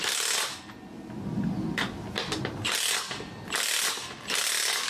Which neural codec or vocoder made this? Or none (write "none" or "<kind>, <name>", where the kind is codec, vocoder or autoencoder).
none